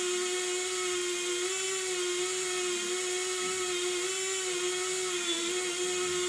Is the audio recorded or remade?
recorded